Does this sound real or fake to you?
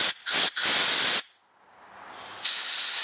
real